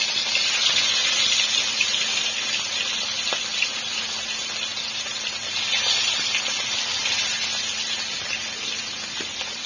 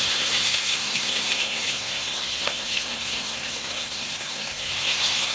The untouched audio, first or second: first